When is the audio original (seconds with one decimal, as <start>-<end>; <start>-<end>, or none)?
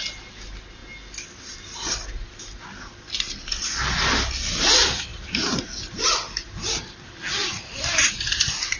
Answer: 0.0-5.1; 5.6-7.4; 8.1-8.8